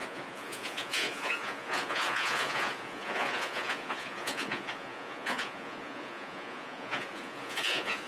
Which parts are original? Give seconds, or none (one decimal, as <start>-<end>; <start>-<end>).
none